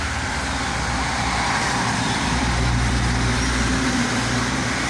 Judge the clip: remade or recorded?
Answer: remade